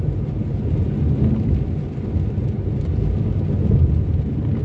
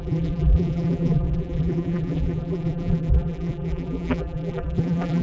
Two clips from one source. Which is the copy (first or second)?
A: second